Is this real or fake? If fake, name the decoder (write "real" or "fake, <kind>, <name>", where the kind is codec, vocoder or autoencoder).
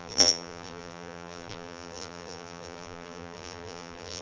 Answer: fake, vocoder, BigVGAN v2